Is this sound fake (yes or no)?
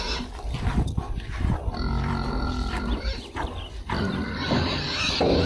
yes